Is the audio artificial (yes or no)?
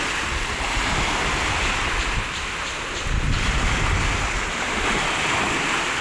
no